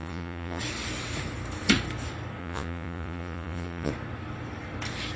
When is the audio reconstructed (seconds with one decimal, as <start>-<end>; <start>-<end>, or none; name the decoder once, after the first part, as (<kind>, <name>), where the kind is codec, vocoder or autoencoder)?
0.0-0.6 (vocoder, Vocos); 2.4-3.9